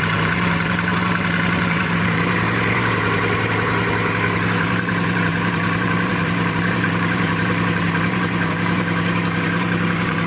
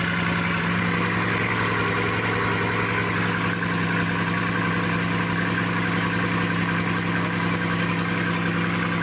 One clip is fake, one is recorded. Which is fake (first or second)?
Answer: first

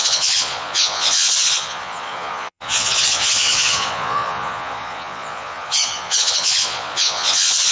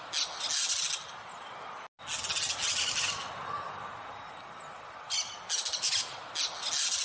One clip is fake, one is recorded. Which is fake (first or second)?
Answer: first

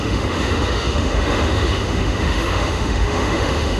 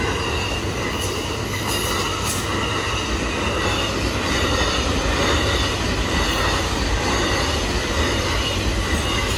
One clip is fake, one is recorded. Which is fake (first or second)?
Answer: first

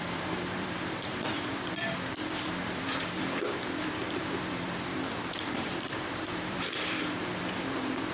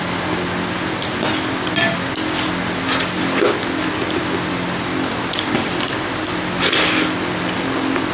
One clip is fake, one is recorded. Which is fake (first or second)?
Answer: first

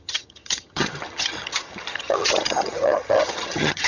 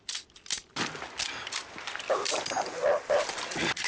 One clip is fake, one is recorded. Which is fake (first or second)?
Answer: first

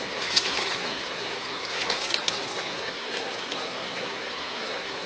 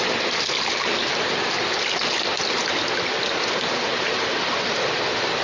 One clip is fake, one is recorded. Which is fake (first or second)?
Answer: first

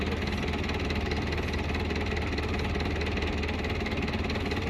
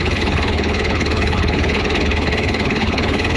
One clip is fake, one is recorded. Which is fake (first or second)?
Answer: second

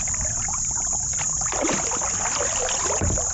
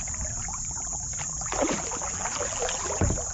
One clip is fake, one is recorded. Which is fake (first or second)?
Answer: second